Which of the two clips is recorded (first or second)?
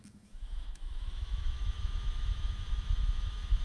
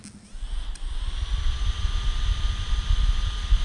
second